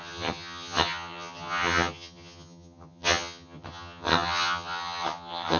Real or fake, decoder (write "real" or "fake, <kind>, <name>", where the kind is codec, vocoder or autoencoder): fake, vocoder, HiFi-GAN